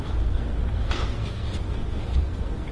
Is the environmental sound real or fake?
fake